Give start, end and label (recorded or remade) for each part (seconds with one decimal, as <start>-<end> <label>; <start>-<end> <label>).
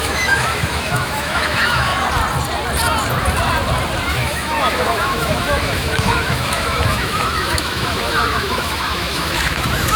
0.0-1.9 remade; 1.9-4.0 recorded; 4.0-10.0 remade